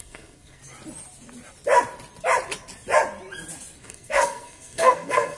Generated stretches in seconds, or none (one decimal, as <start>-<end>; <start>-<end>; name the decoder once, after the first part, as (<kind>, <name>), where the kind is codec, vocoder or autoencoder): 0.0-0.6 (codec, SNAC); 3.8-5.4